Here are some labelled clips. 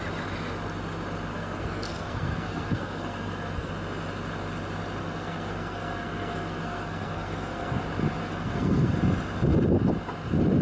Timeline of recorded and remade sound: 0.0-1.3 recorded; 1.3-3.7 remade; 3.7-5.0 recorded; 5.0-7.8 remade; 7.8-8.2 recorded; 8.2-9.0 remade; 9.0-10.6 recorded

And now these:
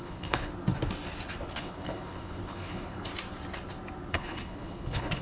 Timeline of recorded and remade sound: 0.0-0.5 remade; 0.5-1.6 recorded; 1.6-3.1 remade; 3.1-4.1 recorded; 4.1-5.2 remade

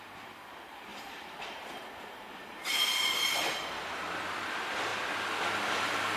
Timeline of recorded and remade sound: 0.0-4.9 remade; 4.9-5.8 recorded; 5.8-6.2 remade